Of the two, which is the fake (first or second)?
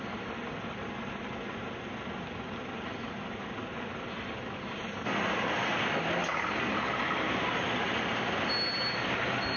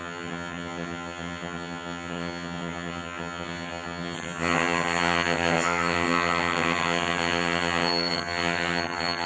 second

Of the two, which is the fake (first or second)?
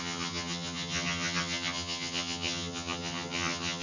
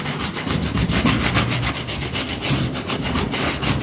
first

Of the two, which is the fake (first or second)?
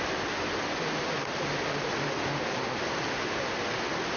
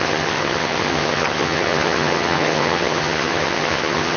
second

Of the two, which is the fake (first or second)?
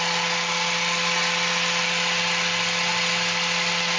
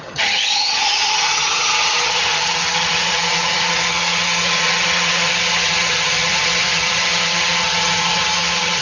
second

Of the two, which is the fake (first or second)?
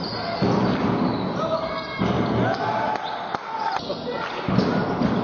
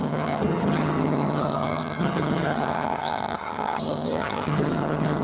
second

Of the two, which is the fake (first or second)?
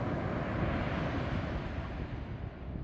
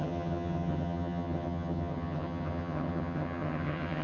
second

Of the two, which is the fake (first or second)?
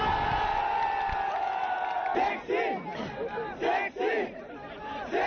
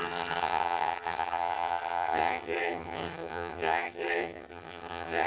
second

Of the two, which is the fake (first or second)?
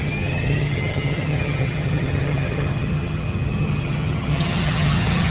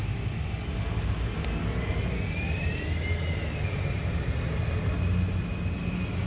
first